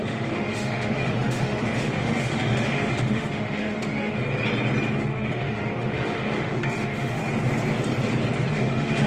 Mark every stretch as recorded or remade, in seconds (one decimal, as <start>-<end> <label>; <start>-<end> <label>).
0.0-4.2 remade; 4.2-5.0 recorded; 5.0-7.2 remade; 7.2-8.5 recorded; 8.5-9.1 remade